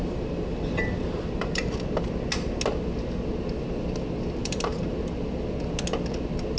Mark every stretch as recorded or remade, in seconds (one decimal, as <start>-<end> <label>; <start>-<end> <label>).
0.0-1.7 remade; 1.7-4.4 recorded; 4.4-5.0 remade; 5.0-6.6 recorded